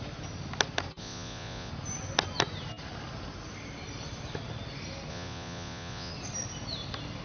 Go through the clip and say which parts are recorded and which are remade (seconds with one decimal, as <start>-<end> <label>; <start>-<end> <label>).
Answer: 0.0-1.0 recorded; 1.0-1.7 remade; 1.7-5.1 recorded; 5.1-6.1 remade; 6.1-7.2 recorded